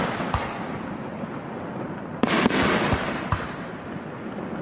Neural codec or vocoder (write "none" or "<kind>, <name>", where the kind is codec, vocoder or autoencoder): none